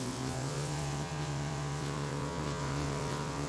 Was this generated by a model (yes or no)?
yes